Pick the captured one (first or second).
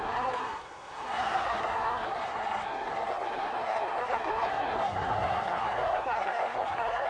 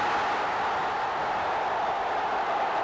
second